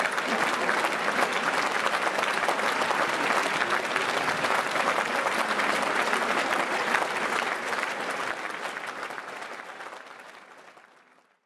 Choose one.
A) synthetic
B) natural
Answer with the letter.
B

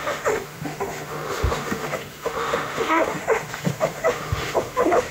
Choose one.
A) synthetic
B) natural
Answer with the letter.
A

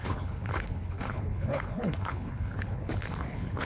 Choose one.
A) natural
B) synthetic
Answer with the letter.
B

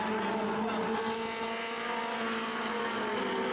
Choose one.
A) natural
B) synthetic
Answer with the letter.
A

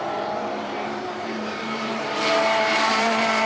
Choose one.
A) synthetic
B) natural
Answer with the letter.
A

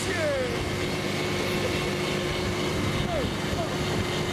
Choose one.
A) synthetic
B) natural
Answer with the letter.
B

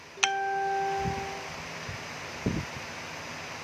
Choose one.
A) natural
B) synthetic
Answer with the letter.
A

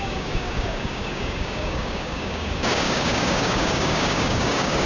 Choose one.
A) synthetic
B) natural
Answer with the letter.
A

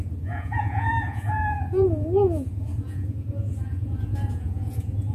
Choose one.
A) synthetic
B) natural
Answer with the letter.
A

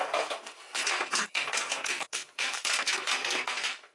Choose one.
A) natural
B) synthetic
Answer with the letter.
B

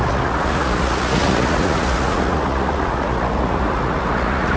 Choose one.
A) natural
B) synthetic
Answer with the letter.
B